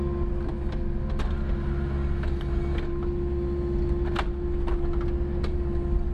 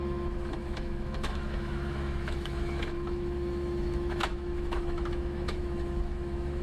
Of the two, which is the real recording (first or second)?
first